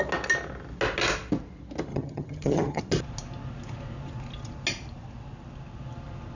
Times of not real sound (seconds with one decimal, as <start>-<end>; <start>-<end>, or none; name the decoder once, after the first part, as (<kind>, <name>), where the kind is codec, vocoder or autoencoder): 1.9-2.8 (vocoder, HiFi-GAN)